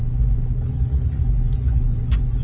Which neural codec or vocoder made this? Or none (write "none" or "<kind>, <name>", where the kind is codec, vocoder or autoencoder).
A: vocoder, Vocos